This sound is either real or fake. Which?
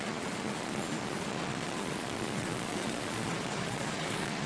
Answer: fake